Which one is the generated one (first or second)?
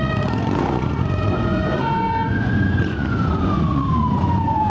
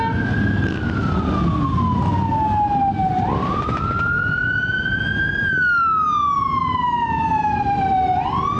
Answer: first